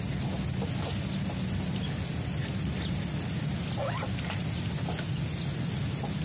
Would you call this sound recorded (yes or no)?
yes